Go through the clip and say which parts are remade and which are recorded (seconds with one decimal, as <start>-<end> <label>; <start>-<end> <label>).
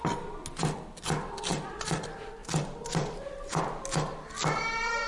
0.0-1.5 recorded; 1.5-2.0 remade; 2.0-2.4 recorded; 2.4-3.6 remade; 3.6-5.1 recorded